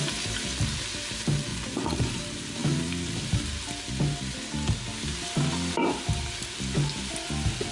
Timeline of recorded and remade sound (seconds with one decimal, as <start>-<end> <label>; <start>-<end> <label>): 0.0-1.5 recorded; 1.5-2.2 remade; 2.2-7.7 recorded